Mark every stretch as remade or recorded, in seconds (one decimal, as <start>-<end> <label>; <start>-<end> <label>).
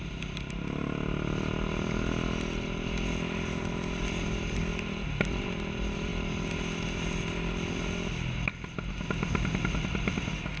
0.0-10.6 recorded